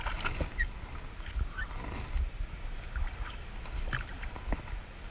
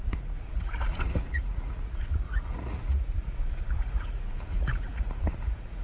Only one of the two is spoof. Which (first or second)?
second